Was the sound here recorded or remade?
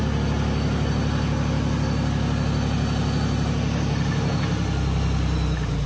recorded